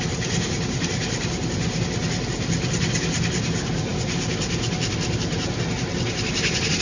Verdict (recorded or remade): recorded